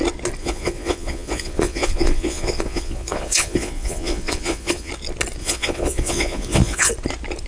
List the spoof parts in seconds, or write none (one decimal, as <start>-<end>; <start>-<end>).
0.4-4.9; 5.4-6.9